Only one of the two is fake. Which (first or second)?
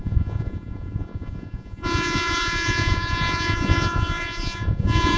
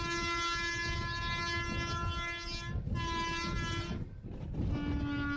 first